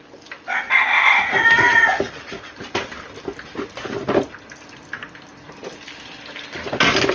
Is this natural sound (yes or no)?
yes